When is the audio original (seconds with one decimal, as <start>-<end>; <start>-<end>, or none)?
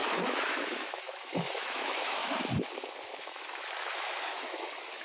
2.2-3.2